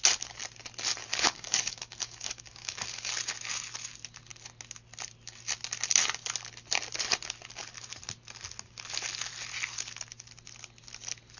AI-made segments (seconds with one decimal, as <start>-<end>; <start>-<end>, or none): 1.1-3.1